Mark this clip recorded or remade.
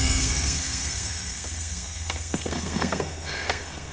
remade